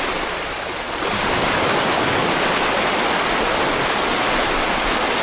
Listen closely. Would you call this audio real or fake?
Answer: real